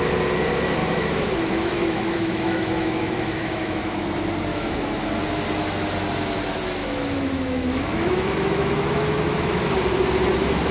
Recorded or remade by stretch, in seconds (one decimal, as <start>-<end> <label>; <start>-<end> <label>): 0.0-0.8 recorded; 0.8-4.0 remade; 4.0-4.5 recorded; 4.5-5.1 remade; 5.1-6.8 recorded; 6.8-9.7 remade; 9.7-10.7 recorded